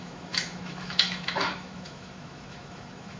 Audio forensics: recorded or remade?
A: remade